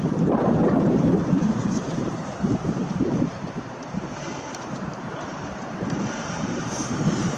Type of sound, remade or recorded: remade